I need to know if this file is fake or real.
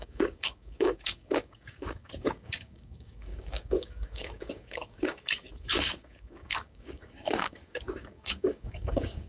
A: fake